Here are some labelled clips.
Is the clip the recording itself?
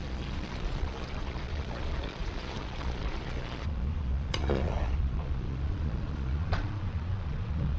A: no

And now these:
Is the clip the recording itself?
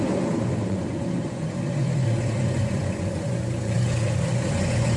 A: no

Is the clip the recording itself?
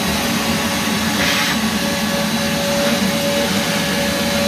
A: yes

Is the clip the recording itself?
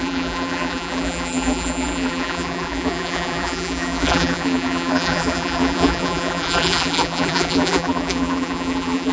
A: no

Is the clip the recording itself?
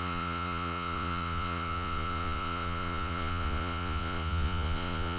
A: no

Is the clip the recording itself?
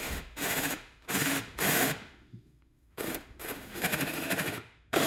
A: no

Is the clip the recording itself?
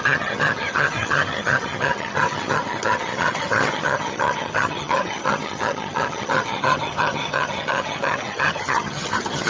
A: no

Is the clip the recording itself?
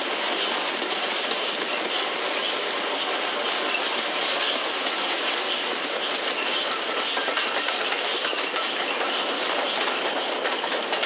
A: yes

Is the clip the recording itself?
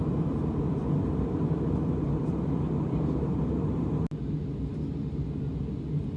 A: yes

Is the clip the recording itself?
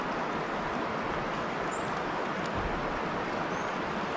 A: yes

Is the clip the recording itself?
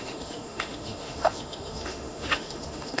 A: no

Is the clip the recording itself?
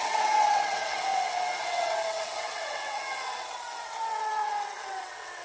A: no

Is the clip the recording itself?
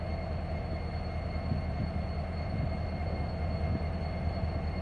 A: yes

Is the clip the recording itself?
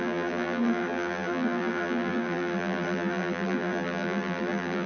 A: no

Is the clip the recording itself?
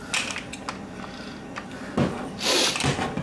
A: yes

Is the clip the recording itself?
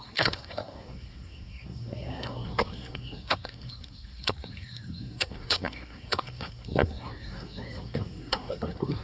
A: no